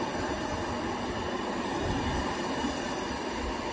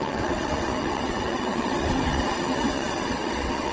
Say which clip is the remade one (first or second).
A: second